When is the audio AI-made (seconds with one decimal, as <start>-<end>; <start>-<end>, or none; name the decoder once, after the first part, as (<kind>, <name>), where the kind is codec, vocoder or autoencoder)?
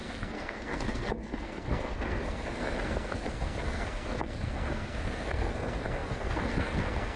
0.0-7.2 (codec, SNAC)